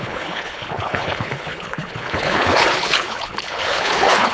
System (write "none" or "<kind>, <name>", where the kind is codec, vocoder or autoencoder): codec, HILCodec